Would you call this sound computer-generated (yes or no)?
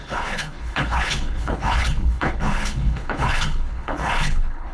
yes